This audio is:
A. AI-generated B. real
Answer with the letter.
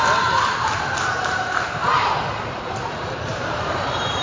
A